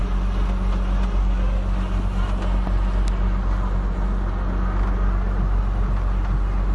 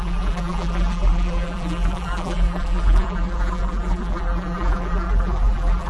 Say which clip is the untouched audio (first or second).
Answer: first